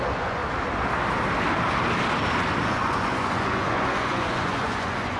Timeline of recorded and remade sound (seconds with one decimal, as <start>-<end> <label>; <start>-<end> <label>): 0.0-0.4 remade; 0.4-2.6 recorded; 2.6-5.2 remade